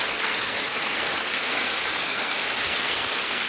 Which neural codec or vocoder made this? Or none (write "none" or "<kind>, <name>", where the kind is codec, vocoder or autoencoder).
codec, SNAC